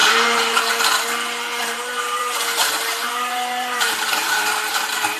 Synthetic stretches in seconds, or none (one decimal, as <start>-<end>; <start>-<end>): 0.0-0.7; 1.6-4.7